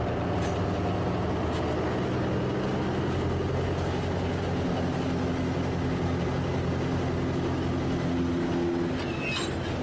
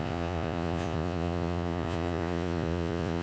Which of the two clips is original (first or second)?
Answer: first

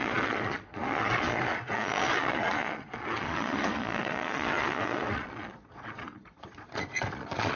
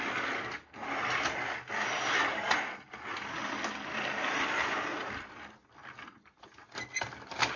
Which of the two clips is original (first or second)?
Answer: second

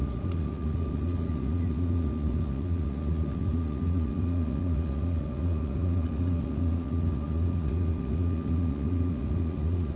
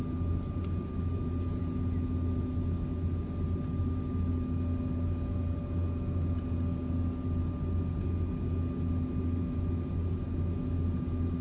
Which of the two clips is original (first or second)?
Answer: second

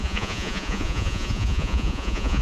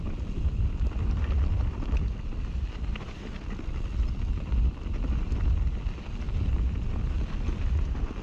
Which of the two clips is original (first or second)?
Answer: second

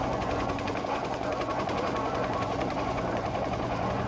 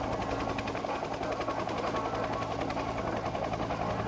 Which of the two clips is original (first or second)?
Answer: second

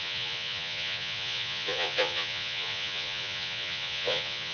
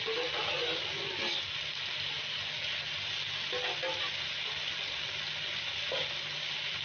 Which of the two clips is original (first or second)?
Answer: second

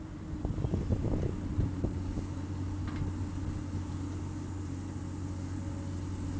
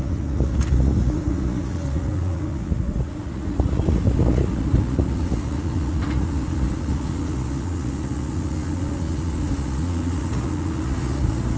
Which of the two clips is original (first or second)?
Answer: first